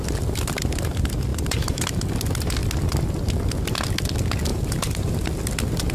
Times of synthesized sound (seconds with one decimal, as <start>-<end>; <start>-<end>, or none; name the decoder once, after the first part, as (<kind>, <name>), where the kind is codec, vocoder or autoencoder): 1.3-2.0 (vocoder, BigVGAN v2); 4.5-5.3